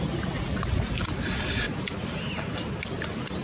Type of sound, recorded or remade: recorded